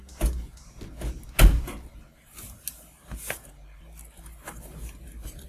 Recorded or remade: recorded